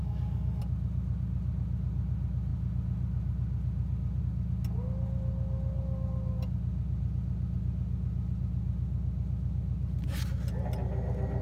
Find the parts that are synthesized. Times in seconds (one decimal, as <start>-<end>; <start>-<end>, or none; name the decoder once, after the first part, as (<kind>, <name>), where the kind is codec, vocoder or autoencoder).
0.0-0.6 (codec, DAC)